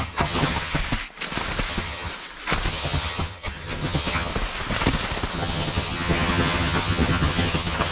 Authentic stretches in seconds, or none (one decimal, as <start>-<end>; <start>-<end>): 0.8-1.7; 2.1-2.7; 4.3-5.3